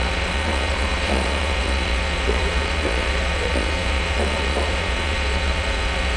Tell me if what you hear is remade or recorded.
remade